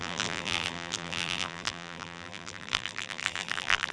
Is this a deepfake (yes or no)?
yes